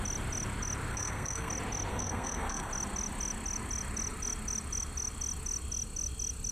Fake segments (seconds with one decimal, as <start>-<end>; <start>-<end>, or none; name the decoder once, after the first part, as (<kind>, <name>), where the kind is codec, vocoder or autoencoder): 0.9-1.5 (codec, SNAC); 1.9-2.7